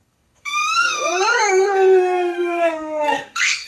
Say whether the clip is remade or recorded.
remade